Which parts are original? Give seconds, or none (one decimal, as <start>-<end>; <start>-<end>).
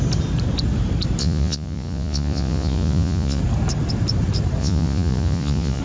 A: 0.0-1.2; 3.4-4.6